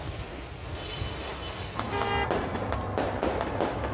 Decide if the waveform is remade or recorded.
recorded